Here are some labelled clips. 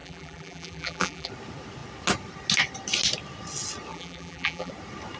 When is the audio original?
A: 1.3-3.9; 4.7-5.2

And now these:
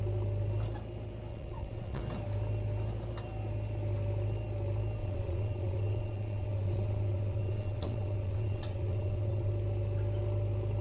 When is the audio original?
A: 0.0-1.3; 2.0-5.0; 9.5-10.8

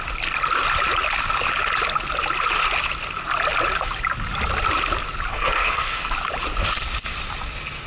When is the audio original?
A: 0.0-5.3; 6.1-7.9

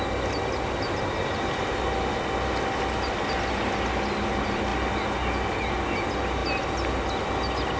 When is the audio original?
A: 0.0-7.8

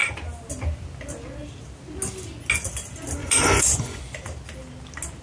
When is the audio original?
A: 0.0-3.2; 4.0-5.2